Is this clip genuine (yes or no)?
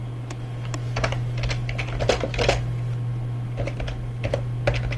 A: yes